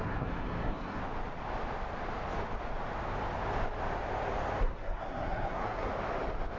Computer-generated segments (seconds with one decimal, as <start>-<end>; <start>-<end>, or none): 0.0-1.0; 4.6-5.9